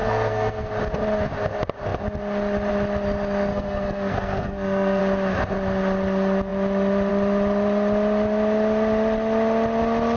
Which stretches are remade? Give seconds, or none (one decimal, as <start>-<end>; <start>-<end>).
0.0-0.7; 3.5-5.0

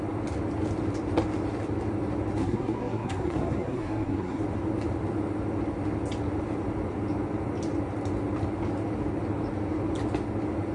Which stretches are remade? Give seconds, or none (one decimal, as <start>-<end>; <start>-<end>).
2.4-4.4

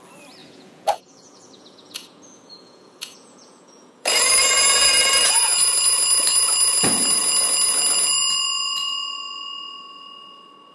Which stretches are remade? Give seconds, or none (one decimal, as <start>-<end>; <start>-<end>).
0.4-4.2

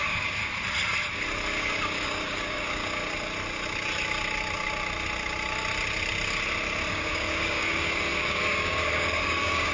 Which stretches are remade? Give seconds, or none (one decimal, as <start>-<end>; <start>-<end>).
0.0-0.4; 1.6-2.8; 6.9-9.7

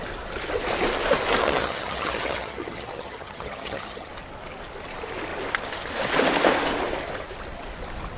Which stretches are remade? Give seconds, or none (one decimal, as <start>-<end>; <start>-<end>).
1.4-4.1

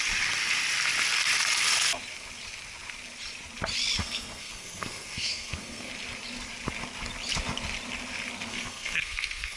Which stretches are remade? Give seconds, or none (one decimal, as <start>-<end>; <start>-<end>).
4.0-5.9; 8.5-9.6

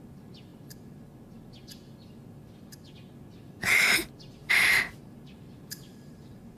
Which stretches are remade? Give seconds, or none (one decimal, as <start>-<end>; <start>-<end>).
0.0-0.5; 4.5-6.6